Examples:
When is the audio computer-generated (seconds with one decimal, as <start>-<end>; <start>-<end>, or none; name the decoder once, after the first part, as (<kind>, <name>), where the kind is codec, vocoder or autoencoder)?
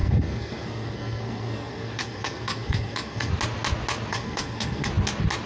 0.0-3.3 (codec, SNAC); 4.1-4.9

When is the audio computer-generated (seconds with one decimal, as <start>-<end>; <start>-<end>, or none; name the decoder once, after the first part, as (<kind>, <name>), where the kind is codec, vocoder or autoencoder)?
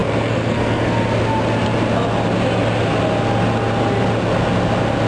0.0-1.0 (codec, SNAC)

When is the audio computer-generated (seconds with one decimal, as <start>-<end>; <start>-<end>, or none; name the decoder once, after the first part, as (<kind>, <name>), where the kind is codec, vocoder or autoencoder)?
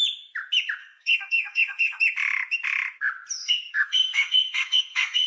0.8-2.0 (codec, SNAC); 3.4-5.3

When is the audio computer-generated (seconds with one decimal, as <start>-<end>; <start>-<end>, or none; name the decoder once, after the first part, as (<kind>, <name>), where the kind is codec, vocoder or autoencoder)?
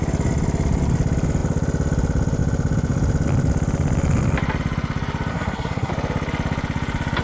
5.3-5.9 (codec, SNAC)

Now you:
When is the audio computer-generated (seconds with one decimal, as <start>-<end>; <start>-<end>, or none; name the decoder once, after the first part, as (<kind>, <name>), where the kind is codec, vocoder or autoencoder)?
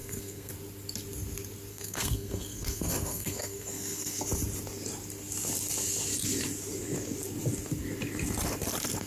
0.0-0.5 (codec, SNAC); 1.7-4.2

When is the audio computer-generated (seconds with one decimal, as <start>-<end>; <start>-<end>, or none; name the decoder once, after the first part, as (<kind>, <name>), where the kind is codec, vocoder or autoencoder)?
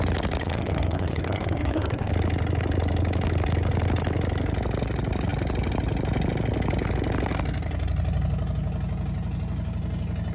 0.4-2.1 (codec, SNAC)